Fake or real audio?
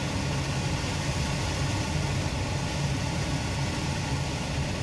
real